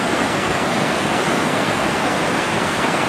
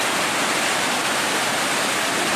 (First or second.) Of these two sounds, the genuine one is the second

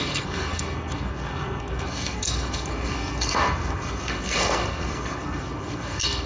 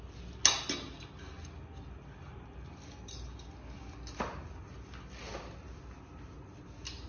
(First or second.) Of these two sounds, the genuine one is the second